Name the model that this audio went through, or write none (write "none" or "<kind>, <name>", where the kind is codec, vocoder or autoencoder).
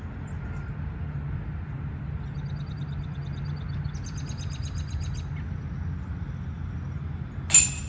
none